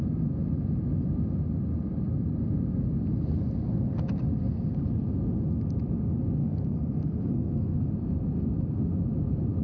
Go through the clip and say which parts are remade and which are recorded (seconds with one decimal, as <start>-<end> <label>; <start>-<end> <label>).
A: 0.0-6.4 recorded; 6.4-7.9 remade; 7.9-9.6 recorded